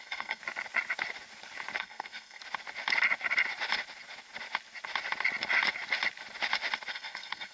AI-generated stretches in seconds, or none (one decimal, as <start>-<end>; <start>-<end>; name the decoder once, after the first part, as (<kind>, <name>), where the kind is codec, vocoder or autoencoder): 0.0-0.4 (codec, SNAC); 1.8-2.4; 6.9-7.5